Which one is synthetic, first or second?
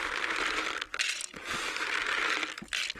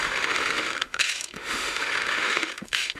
second